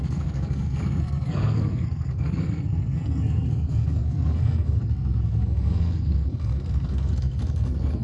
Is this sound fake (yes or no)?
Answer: yes